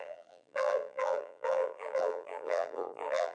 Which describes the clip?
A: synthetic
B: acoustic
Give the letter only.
A